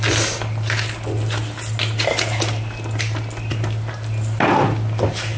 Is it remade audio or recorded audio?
recorded